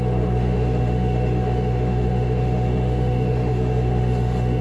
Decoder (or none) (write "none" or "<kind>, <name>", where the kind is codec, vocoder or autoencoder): autoencoder, DAC-VAE